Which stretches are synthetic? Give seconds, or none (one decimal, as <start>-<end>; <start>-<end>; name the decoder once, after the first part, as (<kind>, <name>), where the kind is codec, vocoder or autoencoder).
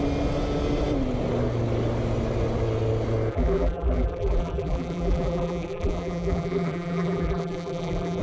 3.3-8.2 (vocoder, BigVGAN v2)